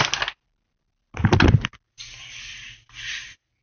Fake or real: real